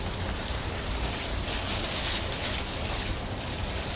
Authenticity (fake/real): real